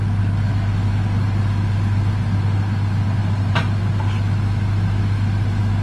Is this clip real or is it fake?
real